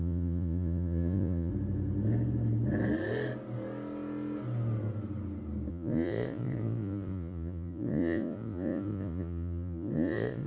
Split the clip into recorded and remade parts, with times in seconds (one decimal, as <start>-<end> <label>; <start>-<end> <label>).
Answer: 0.0-1.5 remade; 1.5-5.7 recorded; 5.7-10.5 remade